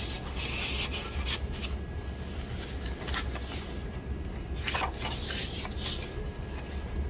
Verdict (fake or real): real